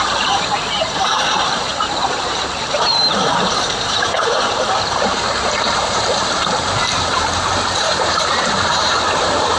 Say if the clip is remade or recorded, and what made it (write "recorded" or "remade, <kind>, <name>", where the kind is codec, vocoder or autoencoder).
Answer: remade, vocoder, BigVGAN v2